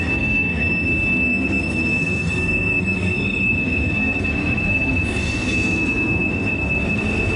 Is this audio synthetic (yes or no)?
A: yes